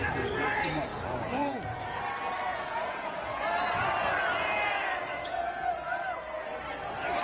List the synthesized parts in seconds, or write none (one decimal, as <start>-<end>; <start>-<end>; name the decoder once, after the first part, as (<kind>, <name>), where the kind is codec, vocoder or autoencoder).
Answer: 0.9-2.0 (vocoder, Vocos); 2.5-3.4; 4.0-5.7